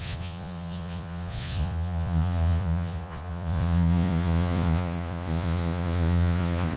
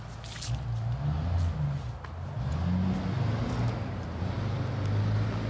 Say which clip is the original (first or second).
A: second